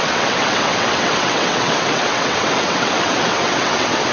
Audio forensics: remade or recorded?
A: remade